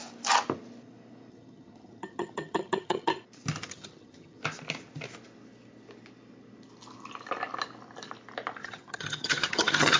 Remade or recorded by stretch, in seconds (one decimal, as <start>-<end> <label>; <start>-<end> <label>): 0.0-1.3 recorded; 1.3-3.1 remade; 3.1-3.7 recorded; 3.7-4.4 remade; 4.4-8.6 recorded; 8.6-10.0 remade